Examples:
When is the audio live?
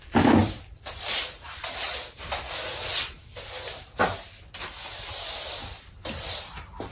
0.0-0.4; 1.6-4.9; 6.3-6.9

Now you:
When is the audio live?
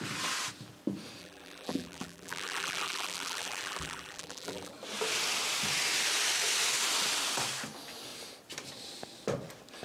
0.0-1.2; 4.7-9.8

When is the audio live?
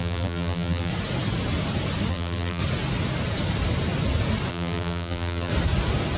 0.9-2.1; 2.6-4.5; 5.5-6.2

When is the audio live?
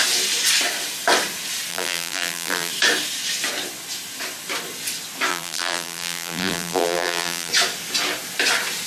0.0-1.7; 2.7-5.3; 7.5-8.9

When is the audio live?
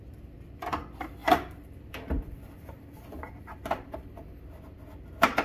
0.0-1.2; 4.4-5.4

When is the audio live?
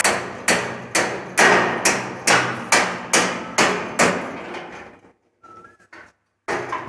0.0-6.9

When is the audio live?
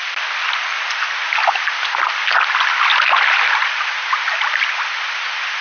0.0-5.6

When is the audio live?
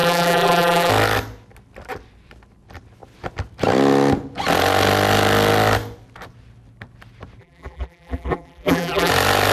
0.9-7.4; 9.1-9.5